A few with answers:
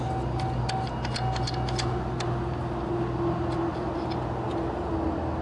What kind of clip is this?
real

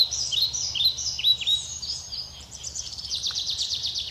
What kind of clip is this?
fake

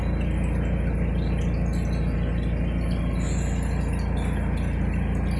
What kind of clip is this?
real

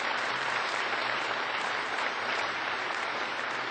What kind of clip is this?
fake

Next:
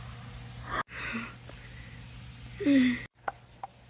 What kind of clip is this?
real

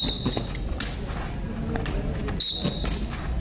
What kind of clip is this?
real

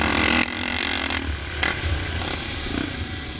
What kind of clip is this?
real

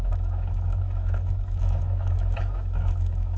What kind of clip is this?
fake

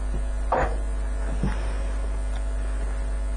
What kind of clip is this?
real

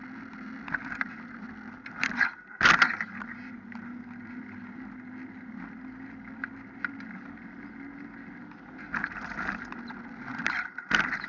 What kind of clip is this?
real